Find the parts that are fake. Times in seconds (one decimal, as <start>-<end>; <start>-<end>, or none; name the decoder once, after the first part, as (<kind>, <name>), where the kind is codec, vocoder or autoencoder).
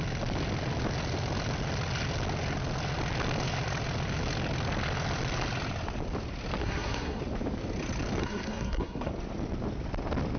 6.6-7.2 (codec, SNAC); 8.2-9.1